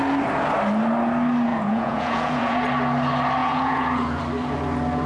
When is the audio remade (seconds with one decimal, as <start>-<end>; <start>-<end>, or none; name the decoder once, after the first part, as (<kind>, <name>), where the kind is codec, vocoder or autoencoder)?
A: 1.5-2.6 (vocoder, Vocos); 3.4-4.2